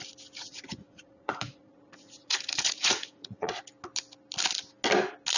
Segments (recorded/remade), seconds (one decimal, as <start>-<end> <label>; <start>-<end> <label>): 0.0-0.4 recorded; 0.4-3.6 remade; 3.6-5.4 recorded